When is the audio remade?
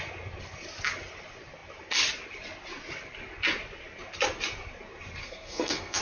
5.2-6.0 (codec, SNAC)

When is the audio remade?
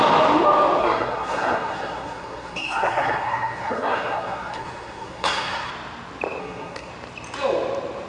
0.8-5.7 (codec, SNAC); 6.4-6.9